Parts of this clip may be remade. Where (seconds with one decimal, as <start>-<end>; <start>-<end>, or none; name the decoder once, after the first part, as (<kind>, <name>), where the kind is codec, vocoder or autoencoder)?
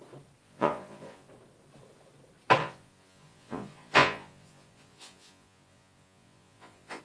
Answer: 0.4-1.3 (vocoder, Vocos); 2.6-7.0